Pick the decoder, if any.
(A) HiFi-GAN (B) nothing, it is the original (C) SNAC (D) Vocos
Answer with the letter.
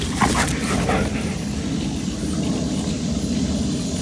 B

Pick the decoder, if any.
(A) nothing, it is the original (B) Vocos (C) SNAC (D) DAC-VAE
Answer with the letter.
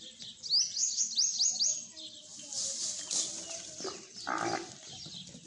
A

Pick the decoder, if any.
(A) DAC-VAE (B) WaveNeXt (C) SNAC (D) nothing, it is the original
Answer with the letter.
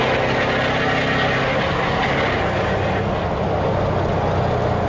D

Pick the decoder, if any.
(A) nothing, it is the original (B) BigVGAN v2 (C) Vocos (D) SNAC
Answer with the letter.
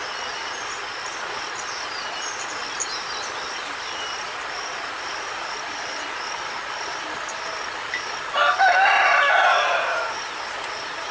A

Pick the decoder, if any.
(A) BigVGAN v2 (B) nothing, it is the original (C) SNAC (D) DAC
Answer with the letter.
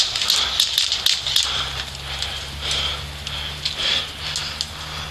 B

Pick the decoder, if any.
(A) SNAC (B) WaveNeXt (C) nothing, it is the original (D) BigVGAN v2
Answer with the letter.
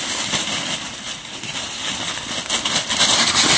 C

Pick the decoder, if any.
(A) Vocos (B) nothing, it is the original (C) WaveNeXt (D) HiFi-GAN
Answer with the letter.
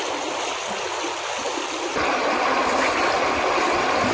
B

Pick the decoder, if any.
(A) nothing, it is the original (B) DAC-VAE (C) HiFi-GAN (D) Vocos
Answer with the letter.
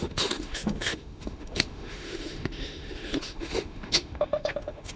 B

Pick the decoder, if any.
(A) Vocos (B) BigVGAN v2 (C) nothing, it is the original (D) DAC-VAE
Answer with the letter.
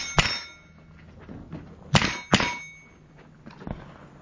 C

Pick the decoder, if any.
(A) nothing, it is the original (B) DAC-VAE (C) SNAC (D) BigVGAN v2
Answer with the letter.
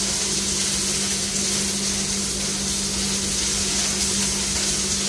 A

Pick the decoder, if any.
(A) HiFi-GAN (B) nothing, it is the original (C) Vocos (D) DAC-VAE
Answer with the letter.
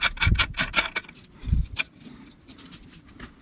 B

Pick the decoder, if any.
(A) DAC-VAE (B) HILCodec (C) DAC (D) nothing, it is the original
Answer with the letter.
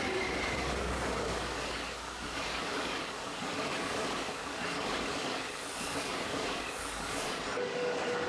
C